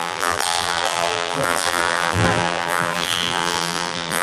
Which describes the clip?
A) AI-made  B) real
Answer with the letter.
A